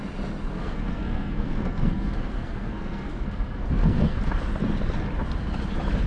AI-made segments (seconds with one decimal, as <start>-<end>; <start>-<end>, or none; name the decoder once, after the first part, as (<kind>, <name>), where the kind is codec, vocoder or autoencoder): 0.5-4.2 (codec, SNAC)